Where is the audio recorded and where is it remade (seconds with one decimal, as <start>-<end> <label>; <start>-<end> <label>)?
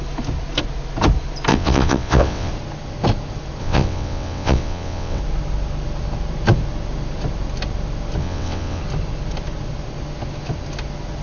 0.0-1.5 recorded; 1.5-2.5 remade; 2.5-3.6 recorded; 3.6-5.2 remade; 5.2-8.2 recorded; 8.2-8.8 remade; 8.8-11.2 recorded